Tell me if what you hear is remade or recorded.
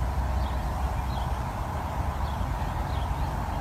recorded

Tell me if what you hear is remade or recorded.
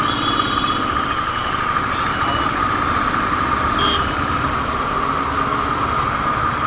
recorded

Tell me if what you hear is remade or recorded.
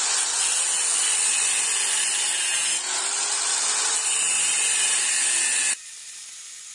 recorded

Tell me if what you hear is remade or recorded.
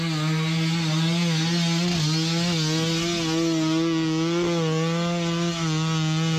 recorded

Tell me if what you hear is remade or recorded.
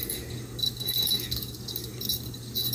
remade